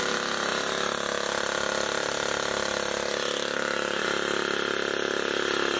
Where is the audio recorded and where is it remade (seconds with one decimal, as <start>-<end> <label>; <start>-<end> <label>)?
0.0-5.8 recorded